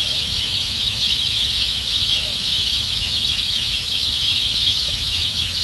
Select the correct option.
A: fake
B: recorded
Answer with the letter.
A